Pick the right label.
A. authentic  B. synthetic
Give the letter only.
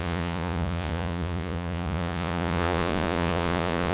B